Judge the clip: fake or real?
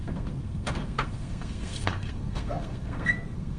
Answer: fake